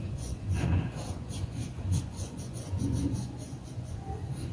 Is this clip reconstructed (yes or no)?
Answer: yes